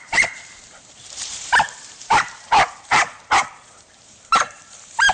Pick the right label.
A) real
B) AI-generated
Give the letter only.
B